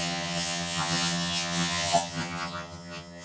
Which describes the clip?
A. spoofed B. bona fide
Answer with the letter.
A